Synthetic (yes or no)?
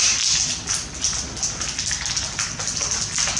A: no